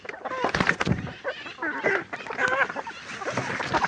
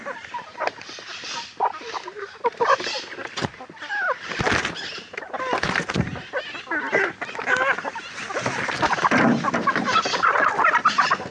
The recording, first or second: second